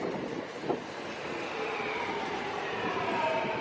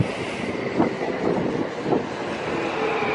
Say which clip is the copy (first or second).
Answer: first